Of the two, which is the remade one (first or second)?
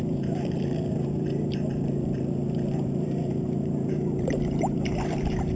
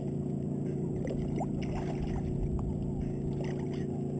first